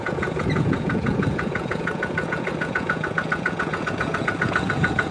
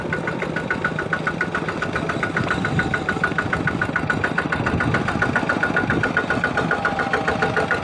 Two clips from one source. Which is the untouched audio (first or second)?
second